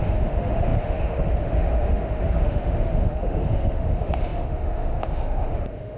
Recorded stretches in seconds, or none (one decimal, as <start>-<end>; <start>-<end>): none